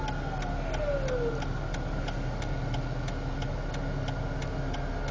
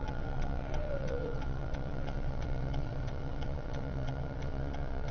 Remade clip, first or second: second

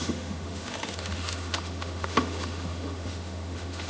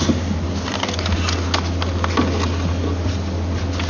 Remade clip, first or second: first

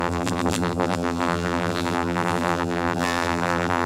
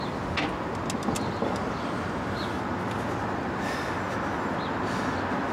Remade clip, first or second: first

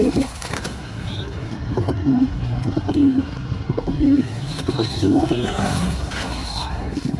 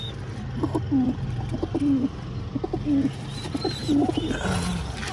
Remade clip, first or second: first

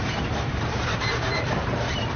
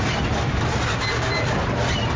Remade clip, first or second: first